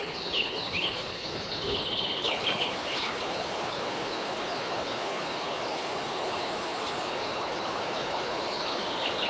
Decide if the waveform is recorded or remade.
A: remade